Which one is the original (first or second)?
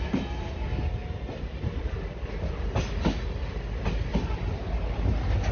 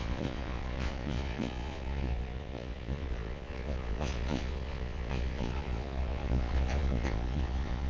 first